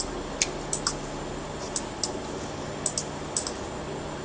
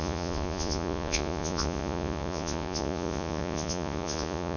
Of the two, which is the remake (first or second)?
second